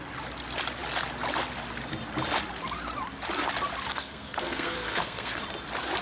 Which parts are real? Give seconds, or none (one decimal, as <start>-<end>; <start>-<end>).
0.0-3.9; 5.4-6.0